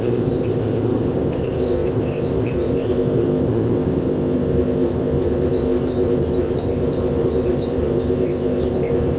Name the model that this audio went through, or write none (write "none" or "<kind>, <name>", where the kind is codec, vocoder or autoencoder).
codec, ZipCodec